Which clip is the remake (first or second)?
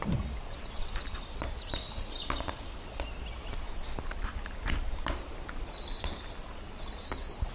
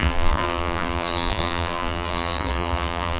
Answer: second